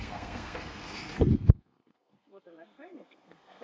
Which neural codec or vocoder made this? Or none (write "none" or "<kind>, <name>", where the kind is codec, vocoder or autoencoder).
codec, SNAC